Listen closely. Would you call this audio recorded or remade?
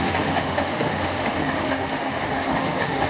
remade